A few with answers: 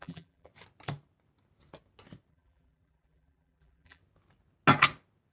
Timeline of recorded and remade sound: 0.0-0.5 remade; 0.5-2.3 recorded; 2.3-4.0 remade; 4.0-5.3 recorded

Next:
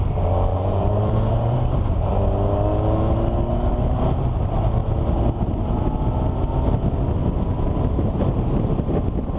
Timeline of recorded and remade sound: 0.0-0.5 recorded; 0.5-2.1 remade; 2.1-7.2 recorded; 7.2-8.2 remade; 8.2-9.4 recorded

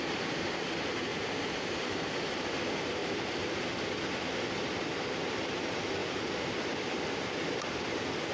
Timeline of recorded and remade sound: 0.0-1.1 recorded; 1.1-2.2 remade; 2.2-3.0 recorded; 3.0-3.9 remade; 3.9-8.3 recorded

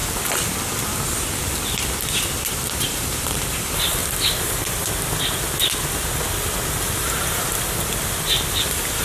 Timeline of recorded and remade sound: 0.0-2.5 recorded; 2.5-4.0 remade; 4.0-8.5 recorded; 8.5-9.0 remade

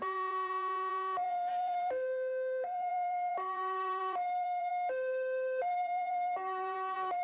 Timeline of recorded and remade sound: 0.0-4.7 remade; 4.7-5.6 recorded; 5.6-7.2 remade

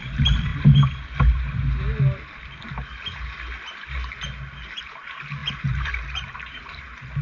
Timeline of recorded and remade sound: 0.0-0.5 remade; 0.5-4.8 recorded; 4.8-7.2 remade

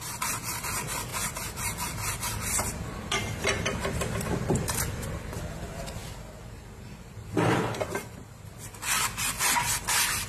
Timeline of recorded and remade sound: 0.0-10.3 remade

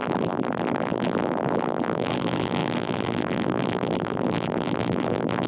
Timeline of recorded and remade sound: 0.0-5.5 remade